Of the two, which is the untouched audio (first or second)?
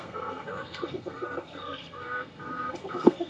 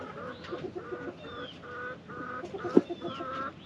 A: second